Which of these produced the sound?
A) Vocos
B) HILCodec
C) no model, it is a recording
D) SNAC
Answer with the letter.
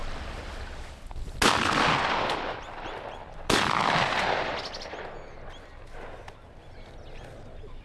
C